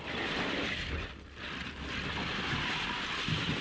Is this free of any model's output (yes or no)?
yes